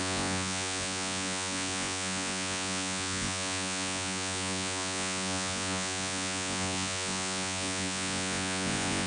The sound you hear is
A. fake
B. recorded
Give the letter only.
A